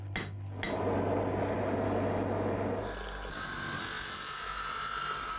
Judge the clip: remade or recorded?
recorded